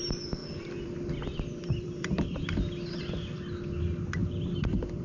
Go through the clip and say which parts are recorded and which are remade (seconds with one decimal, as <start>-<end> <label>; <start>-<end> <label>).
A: 0.0-0.4 recorded; 0.4-3.4 remade; 3.4-4.2 recorded; 4.2-5.0 remade